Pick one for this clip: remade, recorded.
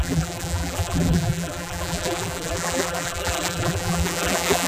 remade